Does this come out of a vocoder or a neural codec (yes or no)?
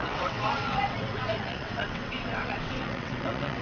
yes